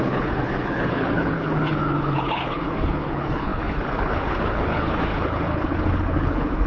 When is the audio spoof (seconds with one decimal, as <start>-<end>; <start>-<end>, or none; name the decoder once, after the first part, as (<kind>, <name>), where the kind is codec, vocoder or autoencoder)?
0.0-6.7 (codec, HILCodec)